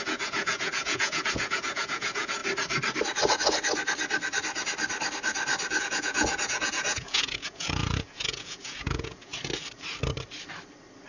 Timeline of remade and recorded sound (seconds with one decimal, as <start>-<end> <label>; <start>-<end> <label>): 0.0-2.4 remade; 2.4-5.8 recorded; 5.8-9.3 remade; 9.3-11.1 recorded